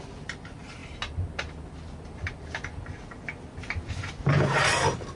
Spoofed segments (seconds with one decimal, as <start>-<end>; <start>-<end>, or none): 0.0-0.8; 3.9-5.2